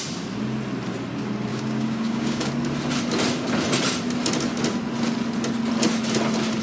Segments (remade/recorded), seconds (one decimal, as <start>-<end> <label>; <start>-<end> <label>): 0.0-1.5 recorded; 1.5-2.5 remade; 2.5-6.6 recorded